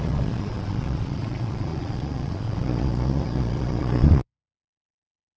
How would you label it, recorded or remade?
remade